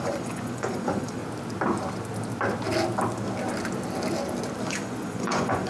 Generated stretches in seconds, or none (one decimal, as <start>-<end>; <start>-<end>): 0.0-1.2; 4.6-5.7